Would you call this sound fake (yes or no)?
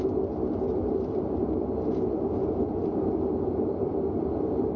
yes